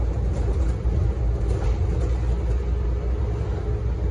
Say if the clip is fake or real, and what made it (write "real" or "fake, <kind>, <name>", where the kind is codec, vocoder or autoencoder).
real